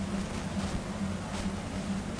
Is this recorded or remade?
recorded